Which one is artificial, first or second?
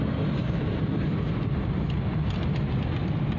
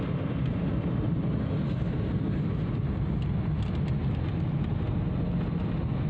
first